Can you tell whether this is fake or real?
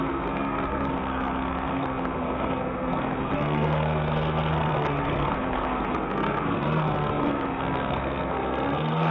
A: fake